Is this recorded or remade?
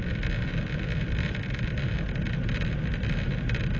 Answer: recorded